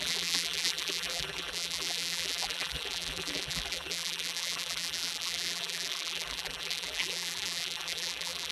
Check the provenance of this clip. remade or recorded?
remade